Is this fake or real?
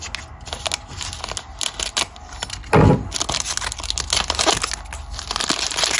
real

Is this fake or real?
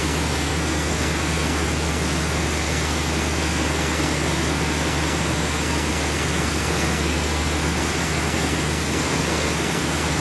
fake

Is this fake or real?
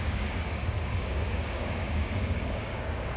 fake